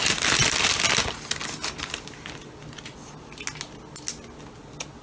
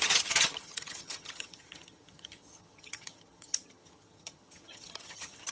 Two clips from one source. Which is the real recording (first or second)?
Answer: first